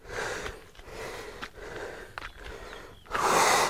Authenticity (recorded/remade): recorded